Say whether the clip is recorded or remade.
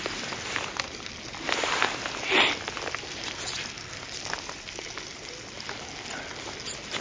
recorded